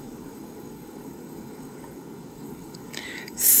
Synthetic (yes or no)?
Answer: yes